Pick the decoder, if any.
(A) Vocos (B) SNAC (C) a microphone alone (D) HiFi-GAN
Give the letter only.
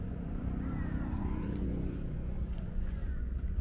A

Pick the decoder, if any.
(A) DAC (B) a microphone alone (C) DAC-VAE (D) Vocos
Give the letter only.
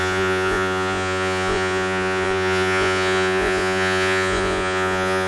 D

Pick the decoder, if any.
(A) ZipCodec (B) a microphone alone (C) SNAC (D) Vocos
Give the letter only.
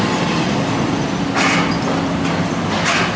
B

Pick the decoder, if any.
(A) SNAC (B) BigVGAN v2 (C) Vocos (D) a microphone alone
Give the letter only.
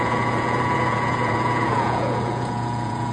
C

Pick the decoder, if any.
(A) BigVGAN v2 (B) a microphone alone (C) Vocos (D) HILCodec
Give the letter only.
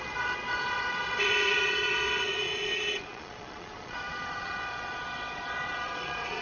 C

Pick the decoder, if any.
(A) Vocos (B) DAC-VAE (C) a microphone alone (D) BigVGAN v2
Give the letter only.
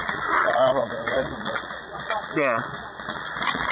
A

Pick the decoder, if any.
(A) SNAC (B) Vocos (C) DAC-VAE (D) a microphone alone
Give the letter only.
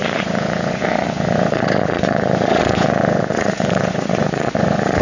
B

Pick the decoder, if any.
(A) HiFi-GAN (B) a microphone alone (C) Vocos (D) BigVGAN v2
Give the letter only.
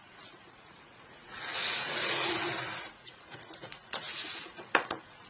C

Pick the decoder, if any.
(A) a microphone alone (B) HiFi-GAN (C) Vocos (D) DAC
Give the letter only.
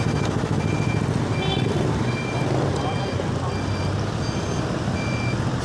A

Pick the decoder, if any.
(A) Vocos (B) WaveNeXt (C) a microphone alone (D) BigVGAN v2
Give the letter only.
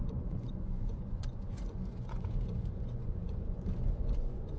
A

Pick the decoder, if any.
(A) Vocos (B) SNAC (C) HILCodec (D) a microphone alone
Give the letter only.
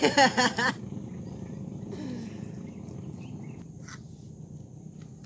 D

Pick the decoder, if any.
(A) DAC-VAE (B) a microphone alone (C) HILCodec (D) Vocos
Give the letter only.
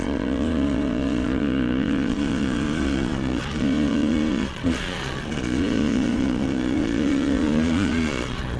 D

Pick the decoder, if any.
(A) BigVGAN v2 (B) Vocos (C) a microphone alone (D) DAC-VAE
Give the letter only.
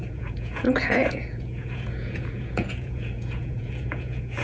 B